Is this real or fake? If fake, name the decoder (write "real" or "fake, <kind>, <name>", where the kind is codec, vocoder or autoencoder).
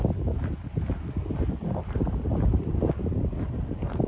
real